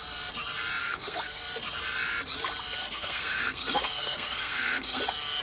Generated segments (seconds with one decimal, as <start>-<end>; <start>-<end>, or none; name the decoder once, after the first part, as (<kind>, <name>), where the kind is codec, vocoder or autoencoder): 0.8-1.4 (codec, SNAC); 2.8-5.0